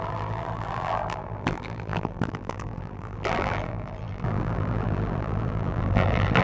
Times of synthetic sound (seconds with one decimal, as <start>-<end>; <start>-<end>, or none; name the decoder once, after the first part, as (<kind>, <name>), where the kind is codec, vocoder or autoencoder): 0.0-6.4 (vocoder, BigVGAN v2)